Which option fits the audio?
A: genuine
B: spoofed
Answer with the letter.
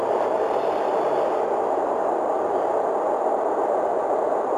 A